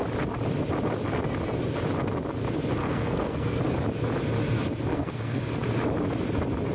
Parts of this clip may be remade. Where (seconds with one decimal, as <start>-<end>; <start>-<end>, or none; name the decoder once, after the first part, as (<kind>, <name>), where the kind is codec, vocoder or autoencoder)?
2.8-3.6 (codec, SNAC); 4.9-5.4